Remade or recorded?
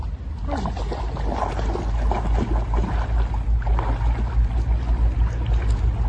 recorded